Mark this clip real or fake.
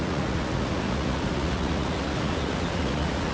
fake